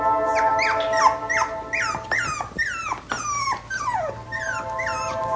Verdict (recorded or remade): recorded